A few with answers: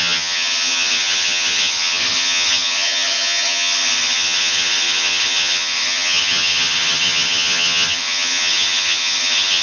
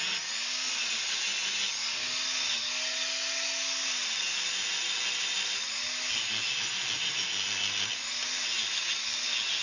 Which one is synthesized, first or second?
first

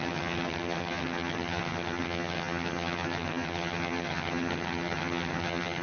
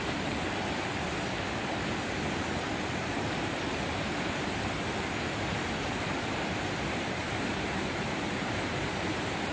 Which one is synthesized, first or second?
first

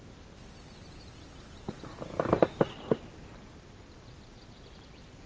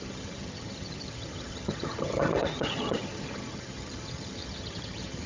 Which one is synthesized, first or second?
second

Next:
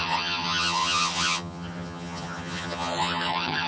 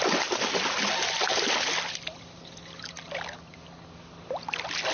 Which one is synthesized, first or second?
first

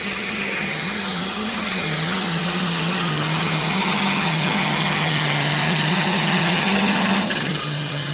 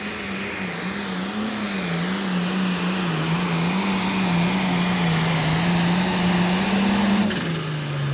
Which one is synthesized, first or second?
first